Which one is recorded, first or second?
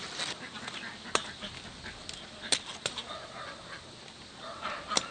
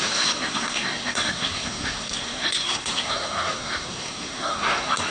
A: first